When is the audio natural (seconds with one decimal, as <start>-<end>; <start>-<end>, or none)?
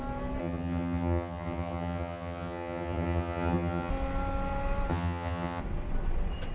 0.0-0.4; 3.9-4.9; 5.6-6.5